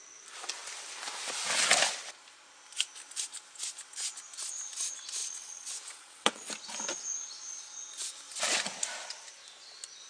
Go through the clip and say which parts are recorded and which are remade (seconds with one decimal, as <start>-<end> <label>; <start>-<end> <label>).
0.0-5.2 recorded; 5.2-6.5 remade; 6.5-10.1 recorded